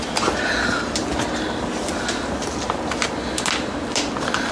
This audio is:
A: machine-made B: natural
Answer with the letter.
B